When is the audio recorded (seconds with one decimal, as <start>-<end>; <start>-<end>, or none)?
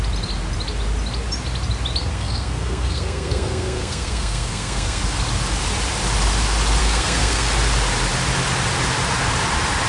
0.0-2.0; 5.0-6.8; 7.5-9.9